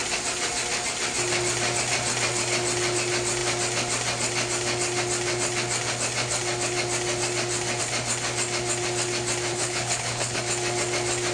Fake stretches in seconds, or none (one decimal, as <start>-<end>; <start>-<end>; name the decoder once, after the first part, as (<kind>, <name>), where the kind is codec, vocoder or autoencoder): 9.5-10.4 (codec, HILCodec)